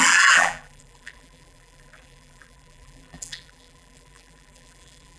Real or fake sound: fake